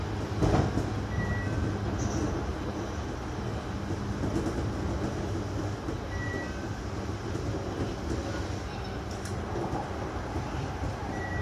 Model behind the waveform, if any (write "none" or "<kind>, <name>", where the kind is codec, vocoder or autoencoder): none